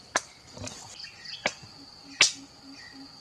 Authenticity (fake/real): fake